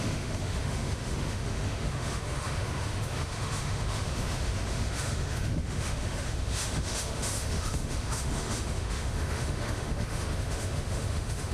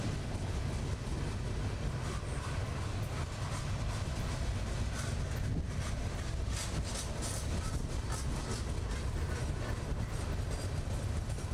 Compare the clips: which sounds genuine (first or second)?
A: second